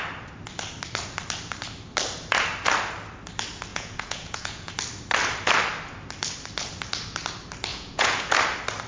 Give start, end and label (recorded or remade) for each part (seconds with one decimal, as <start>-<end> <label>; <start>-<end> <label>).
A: 0.0-3.7 recorded; 3.7-4.7 remade; 4.7-7.7 recorded; 7.7-8.3 remade; 8.3-8.9 recorded